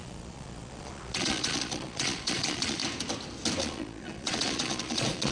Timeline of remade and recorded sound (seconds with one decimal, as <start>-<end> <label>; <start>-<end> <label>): 0.0-2.8 remade; 2.8-3.6 recorded; 3.6-5.3 remade